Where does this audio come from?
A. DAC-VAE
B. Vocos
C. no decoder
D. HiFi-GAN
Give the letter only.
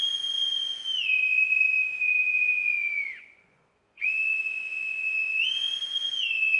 B